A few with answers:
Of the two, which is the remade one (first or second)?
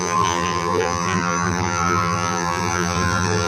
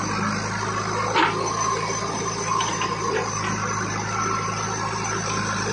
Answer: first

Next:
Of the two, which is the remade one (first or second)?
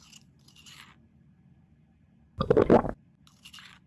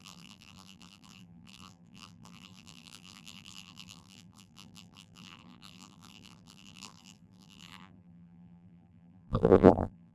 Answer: second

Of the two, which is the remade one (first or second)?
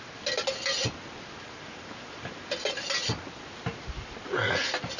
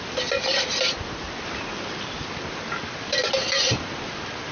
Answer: second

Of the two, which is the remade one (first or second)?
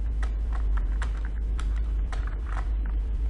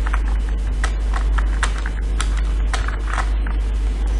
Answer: first